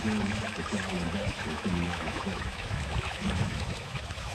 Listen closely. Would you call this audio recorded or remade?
remade